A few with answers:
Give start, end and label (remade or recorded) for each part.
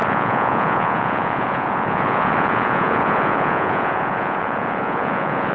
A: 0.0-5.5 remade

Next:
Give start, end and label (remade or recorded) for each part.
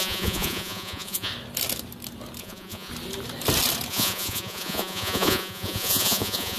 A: 0.0-1.3 remade; 1.3-2.4 recorded; 2.4-2.9 remade; 2.9-3.9 recorded; 3.9-6.6 remade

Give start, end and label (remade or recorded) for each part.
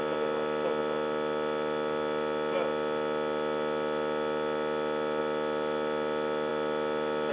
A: 0.0-7.3 recorded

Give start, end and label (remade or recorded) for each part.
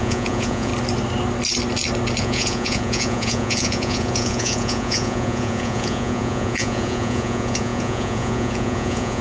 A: 0.0-0.7 remade; 0.7-2.2 recorded; 2.2-9.2 remade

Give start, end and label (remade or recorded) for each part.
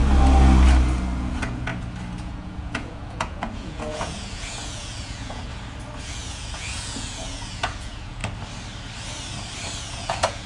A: 0.0-1.2 recorded; 1.2-1.7 remade; 1.7-2.2 recorded; 2.2-5.5 remade; 5.5-6.0 recorded; 6.0-8.2 remade; 8.2-9.8 recorded; 9.8-10.5 remade